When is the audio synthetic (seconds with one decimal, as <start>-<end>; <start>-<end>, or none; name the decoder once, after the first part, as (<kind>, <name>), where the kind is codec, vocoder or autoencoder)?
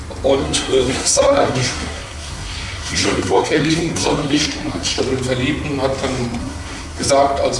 0.4-5.0 (codec, SNAC); 6.4-7.1